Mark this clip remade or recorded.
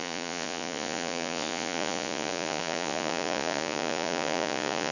remade